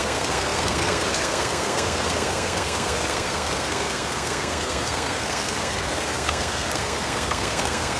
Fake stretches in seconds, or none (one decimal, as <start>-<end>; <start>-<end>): 0.0-8.0